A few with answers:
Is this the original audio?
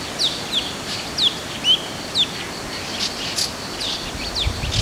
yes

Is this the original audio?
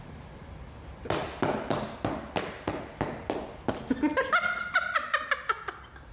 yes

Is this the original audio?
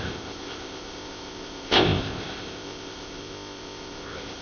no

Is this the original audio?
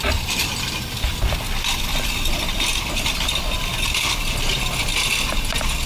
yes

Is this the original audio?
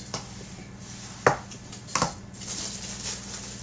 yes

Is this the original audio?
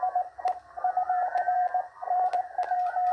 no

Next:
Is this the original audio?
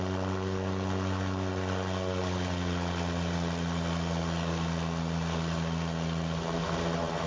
yes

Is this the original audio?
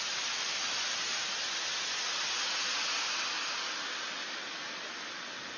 yes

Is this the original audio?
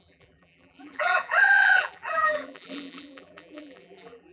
no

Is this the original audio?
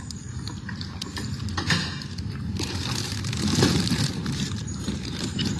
no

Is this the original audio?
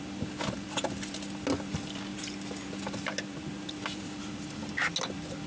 yes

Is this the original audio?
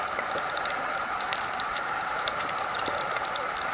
no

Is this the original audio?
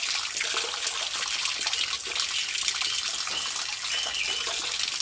yes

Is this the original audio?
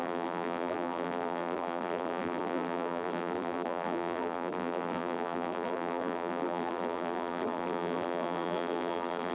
no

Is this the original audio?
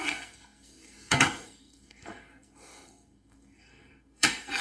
no